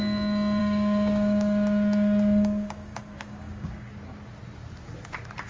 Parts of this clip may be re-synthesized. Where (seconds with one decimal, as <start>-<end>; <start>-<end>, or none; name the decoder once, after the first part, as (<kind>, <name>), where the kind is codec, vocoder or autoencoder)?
0.6-3.9 (codec, DAC)